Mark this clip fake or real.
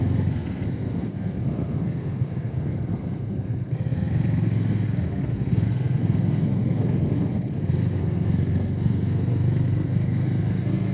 fake